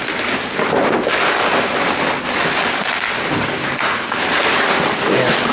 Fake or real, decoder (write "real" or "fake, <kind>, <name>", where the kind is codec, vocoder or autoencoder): real